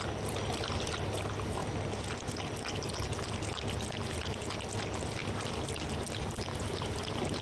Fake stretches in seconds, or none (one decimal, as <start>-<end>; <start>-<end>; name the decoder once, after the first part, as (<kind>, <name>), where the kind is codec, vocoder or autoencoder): 6.5-7.4 (vocoder, BigVGAN v2)